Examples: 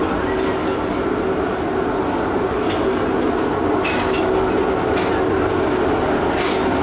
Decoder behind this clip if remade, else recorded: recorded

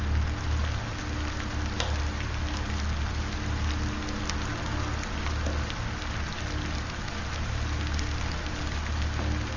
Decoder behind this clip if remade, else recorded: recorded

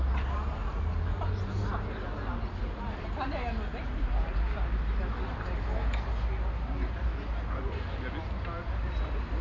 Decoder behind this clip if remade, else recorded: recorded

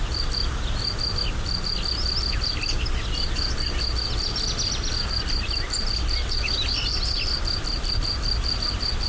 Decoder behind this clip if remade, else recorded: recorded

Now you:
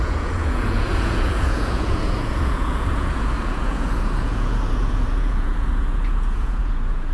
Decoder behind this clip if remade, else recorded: remade, vocoder, Vocos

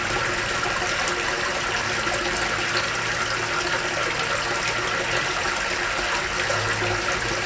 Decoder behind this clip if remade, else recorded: recorded